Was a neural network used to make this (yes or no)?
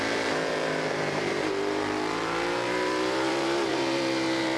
yes